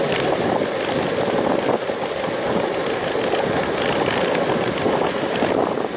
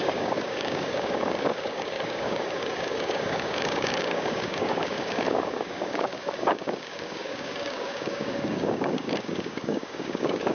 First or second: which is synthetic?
second